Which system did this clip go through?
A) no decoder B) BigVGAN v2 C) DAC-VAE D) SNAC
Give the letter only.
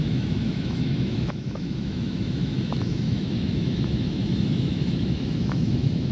C